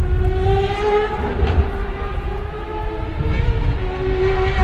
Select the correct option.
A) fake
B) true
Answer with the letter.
B